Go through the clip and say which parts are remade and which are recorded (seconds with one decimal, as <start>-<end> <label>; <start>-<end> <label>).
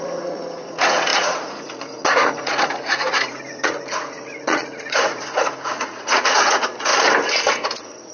0.0-6.9 remade; 6.9-7.5 recorded; 7.5-8.1 remade